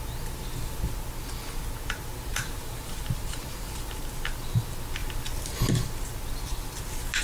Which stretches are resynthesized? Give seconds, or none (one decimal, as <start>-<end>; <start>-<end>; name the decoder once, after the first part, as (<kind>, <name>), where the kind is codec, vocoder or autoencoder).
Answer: 2.3-4.0 (vocoder, BigVGAN v2)